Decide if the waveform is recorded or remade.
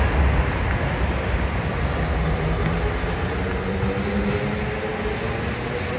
recorded